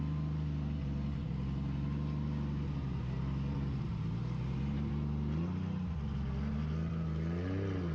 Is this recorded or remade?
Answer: recorded